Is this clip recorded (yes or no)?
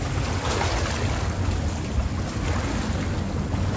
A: yes